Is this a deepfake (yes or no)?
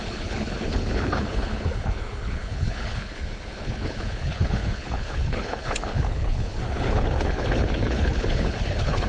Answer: yes